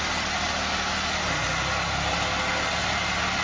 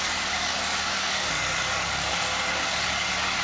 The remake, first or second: second